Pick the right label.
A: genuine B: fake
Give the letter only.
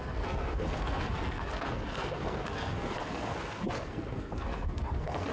B